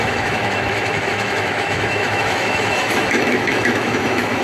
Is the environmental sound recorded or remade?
remade